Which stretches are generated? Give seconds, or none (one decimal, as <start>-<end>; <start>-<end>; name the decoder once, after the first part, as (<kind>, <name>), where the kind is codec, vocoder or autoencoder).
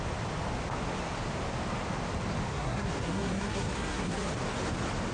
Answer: 2.5-4.3 (codec, SNAC)